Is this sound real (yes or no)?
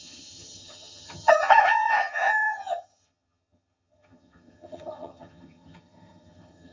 no